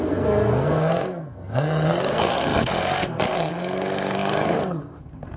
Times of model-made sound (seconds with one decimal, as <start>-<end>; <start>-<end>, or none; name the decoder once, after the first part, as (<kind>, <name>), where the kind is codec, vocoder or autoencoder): 0.0-5.4 (codec, SNAC)